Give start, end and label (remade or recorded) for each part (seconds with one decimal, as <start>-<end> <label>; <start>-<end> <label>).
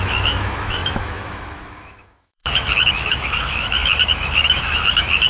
0.0-5.3 remade